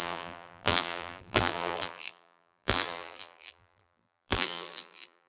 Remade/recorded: remade